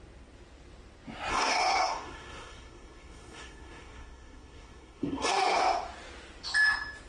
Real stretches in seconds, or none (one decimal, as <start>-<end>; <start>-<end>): 0.0-1.3; 5.6-7.1